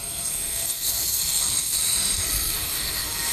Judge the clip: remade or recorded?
remade